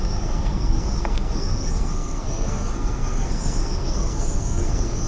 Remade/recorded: remade